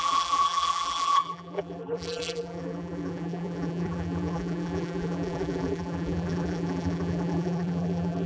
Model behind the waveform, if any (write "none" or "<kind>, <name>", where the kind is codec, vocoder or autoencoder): vocoder, BigVGAN v2